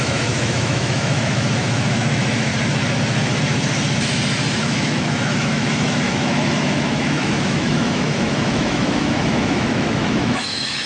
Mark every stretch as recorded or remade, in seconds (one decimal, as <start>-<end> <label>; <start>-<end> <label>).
0.0-2.5 remade; 2.5-4.6 recorded; 4.6-10.9 remade